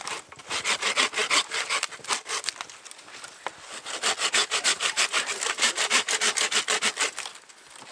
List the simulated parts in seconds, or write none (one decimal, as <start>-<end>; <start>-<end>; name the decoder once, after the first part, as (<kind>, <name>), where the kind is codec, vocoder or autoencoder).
4.4-6.1 (vocoder, BigVGAN v2)

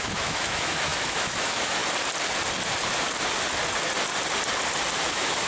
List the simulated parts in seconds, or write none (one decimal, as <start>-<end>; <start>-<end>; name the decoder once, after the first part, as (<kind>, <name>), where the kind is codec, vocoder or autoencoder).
0.0-1.8 (autoencoder, DAC-VAE); 5.1-5.5

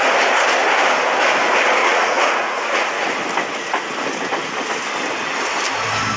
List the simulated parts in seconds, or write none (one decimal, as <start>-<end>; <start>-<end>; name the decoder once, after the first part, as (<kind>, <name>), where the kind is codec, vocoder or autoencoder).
1.8-3.1 (vocoder, Vocos)